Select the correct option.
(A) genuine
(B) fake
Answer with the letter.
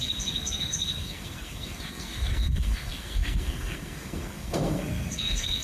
B